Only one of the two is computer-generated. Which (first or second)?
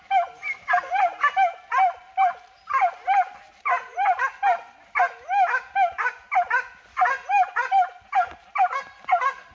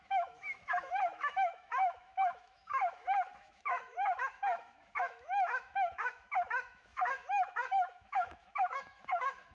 second